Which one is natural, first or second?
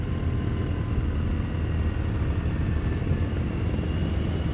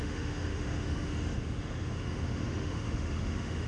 first